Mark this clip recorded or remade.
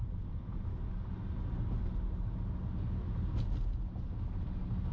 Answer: recorded